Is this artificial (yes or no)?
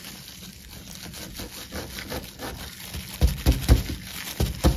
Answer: no